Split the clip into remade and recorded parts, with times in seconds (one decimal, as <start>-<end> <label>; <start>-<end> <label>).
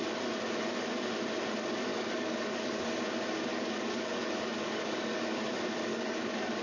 0.0-1.9 recorded; 1.9-2.9 remade; 2.9-3.5 recorded; 3.5-5.5 remade; 5.5-5.9 recorded; 5.9-6.6 remade